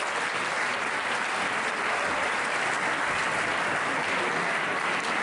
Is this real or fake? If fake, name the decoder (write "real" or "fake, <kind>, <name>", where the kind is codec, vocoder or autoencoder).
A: real